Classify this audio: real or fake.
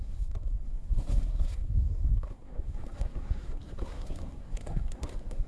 fake